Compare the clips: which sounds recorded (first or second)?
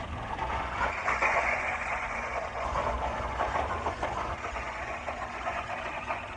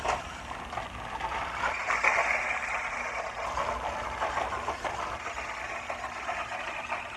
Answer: second